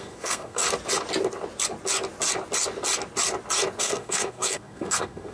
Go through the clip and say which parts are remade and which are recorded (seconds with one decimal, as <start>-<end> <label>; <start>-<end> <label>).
0.0-0.6 remade; 0.6-3.8 recorded; 3.8-5.3 remade